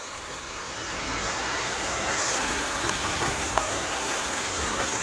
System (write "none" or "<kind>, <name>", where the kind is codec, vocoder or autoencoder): codec, SNAC